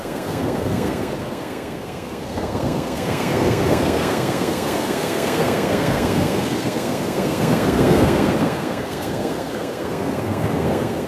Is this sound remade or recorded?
remade